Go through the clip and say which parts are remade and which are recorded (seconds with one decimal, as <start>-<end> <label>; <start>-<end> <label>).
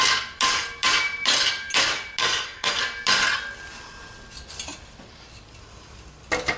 0.0-2.2 recorded; 2.2-2.8 remade; 2.8-6.6 recorded